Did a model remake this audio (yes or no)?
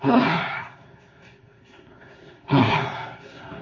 yes